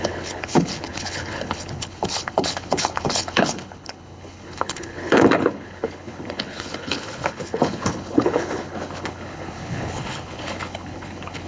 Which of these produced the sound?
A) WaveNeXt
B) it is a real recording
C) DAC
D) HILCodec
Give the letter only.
D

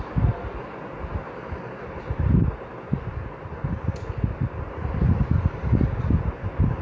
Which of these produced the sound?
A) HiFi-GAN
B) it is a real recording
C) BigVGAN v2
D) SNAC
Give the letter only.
B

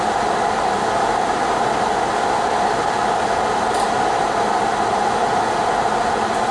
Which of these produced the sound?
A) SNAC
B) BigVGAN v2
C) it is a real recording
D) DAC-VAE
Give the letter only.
C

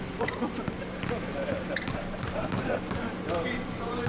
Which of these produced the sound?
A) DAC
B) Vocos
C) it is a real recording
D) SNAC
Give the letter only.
C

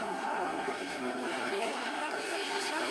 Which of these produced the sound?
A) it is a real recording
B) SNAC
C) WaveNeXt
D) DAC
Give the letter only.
B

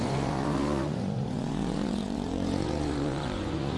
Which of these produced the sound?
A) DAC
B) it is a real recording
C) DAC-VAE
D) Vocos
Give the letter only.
D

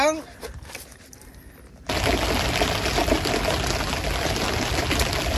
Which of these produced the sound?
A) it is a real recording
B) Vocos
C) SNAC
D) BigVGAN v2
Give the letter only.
A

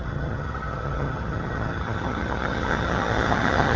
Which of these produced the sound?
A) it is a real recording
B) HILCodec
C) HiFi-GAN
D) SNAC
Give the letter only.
C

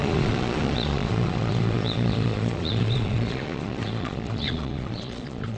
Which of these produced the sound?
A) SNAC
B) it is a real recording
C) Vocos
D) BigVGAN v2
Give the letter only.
C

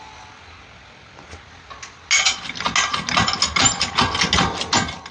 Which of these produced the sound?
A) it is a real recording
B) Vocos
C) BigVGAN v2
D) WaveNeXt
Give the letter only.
A